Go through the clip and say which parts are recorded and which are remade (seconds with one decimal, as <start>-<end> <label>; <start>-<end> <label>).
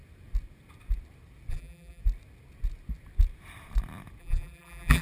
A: 0.0-1.5 recorded; 1.5-2.0 remade; 2.0-4.2 recorded; 4.2-5.0 remade